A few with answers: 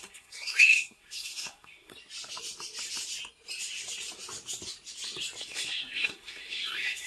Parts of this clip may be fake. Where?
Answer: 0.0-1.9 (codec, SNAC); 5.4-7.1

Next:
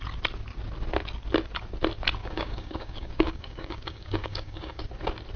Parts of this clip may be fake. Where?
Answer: 2.2-4.8 (codec, DAC)

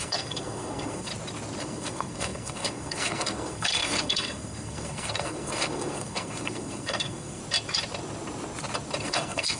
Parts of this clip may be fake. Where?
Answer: 0.0-1.1 (codec, SNAC); 1.6-7.4; 9.0-9.6

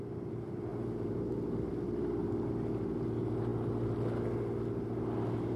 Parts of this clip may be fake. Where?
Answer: none

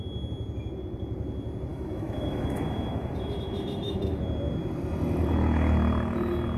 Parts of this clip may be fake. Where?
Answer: 1.7-4.2 (autoencoder, DAC-VAE)